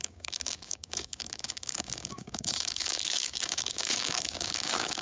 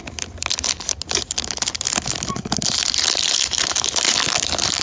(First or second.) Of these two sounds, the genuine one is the second